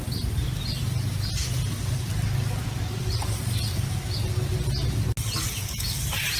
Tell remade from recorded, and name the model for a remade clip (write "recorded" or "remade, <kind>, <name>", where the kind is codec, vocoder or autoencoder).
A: recorded